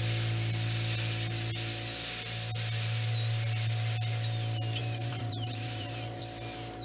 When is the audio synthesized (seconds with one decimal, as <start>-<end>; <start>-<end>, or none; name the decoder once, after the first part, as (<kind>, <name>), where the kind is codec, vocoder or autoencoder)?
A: 4.8-6.2 (vocoder, BigVGAN v2)